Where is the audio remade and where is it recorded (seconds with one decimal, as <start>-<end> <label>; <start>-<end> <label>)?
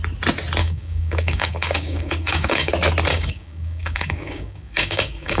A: 0.0-0.6 recorded; 0.6-2.7 remade; 2.7-3.1 recorded; 3.1-5.4 remade